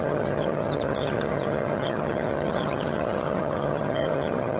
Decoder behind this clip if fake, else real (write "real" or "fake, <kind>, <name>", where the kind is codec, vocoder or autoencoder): fake, vocoder, HiFi-GAN